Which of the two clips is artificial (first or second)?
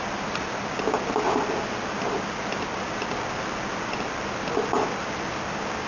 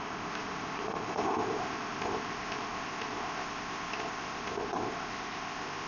second